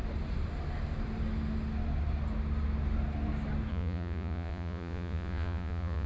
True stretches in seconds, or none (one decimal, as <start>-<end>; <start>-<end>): 0.0-3.7